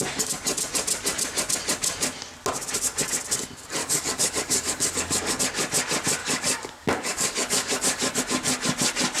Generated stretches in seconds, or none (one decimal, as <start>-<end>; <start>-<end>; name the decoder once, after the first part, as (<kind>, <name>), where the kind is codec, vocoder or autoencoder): 3.8-5.4 (codec, DAC); 6.2-8.2